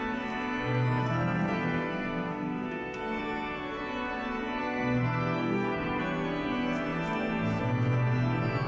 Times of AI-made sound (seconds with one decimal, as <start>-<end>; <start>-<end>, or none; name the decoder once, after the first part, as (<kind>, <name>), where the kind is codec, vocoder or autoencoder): 1.0-3.2 (codec, SNAC); 4.6-6.0